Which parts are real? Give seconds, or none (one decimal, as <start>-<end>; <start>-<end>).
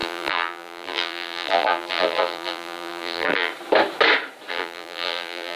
3.5-4.5